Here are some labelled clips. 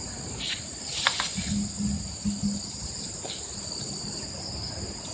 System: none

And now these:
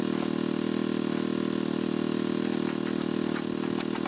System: none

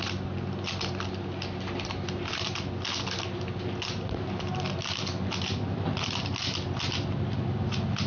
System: none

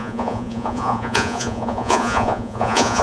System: vocoder, Vocos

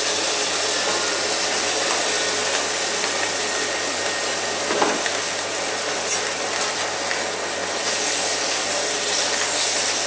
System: none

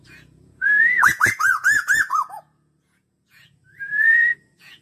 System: vocoder, Vocos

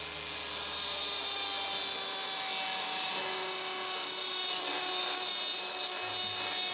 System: none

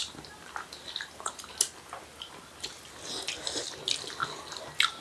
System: none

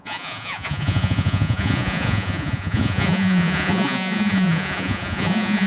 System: vocoder, Vocos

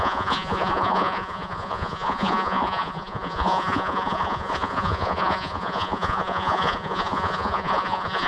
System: vocoder, Vocos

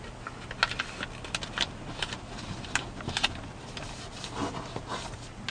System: none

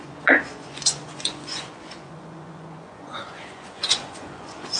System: vocoder, Vocos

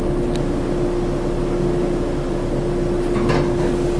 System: none